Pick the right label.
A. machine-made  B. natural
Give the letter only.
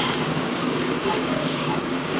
A